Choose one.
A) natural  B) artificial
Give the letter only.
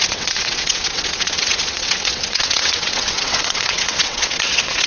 B